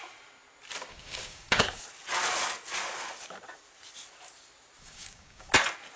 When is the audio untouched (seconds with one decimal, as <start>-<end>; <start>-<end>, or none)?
0.0-0.9; 1.8-4.8; 5.5-6.0

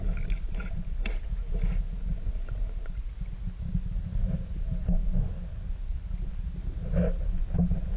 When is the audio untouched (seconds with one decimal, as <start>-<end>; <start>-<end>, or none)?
0.0-8.0

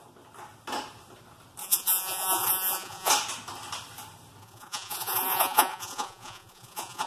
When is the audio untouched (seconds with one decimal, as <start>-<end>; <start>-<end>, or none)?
0.0-1.6; 3.1-4.4

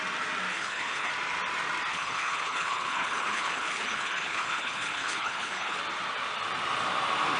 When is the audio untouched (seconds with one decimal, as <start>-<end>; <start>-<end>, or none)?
0.0-0.5; 1.1-1.9; 5.8-7.4

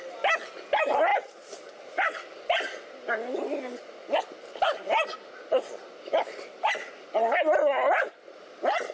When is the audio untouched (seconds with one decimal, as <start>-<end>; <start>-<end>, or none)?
0.0-8.9

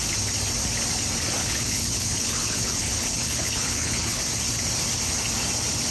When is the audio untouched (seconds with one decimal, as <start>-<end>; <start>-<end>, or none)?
0.0-1.4; 4.2-5.9